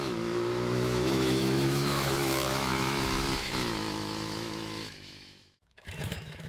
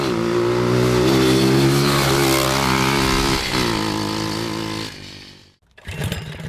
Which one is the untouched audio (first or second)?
second